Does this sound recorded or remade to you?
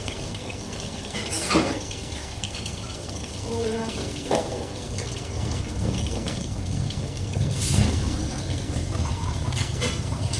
remade